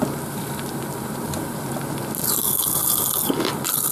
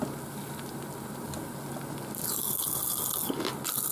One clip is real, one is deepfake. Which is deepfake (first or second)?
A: first